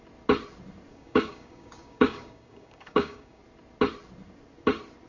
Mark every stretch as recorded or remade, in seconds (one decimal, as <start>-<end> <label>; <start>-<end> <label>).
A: 0.0-0.9 recorded; 0.9-3.4 remade; 3.4-5.1 recorded